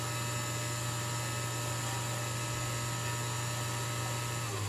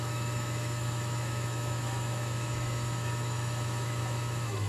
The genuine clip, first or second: first